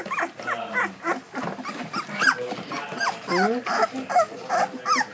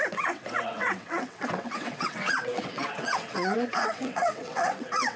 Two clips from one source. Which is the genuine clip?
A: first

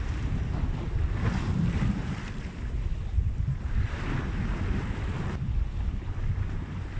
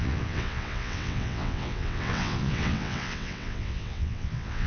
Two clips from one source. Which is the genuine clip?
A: first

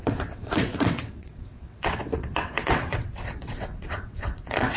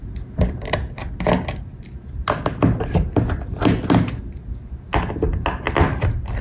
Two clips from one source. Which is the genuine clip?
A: second